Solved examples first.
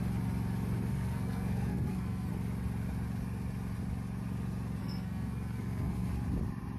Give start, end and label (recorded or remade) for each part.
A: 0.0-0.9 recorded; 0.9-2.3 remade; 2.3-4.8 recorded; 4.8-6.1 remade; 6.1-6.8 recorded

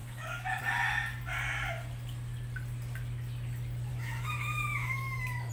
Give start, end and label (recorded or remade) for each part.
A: 0.0-0.6 remade; 0.6-3.9 recorded; 3.9-5.5 remade

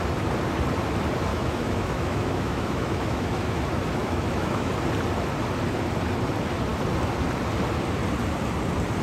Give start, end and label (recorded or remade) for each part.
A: 0.0-1.3 recorded; 1.3-3.6 remade; 3.6-4.0 recorded; 4.0-4.7 remade; 4.7-9.0 recorded

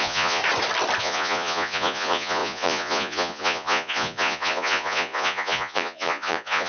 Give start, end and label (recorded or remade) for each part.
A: 0.0-0.4 remade; 0.4-1.0 recorded; 1.0-6.7 remade

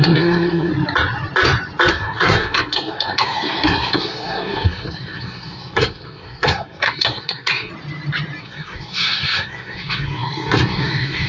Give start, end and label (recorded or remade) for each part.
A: 0.0-0.7 remade; 0.7-1.9 recorded; 1.9-7.7 remade; 7.7-8.4 recorded; 8.4-11.3 remade

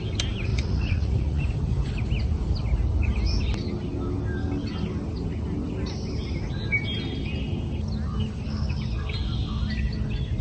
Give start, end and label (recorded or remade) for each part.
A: 0.0-0.5 recorded; 0.5-1.4 remade; 1.4-10.4 recorded

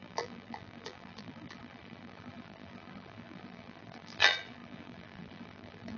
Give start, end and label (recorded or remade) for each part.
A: 0.0-6.0 remade

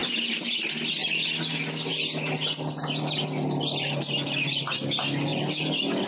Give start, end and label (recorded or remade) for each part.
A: 0.0-0.6 remade; 0.6-6.1 recorded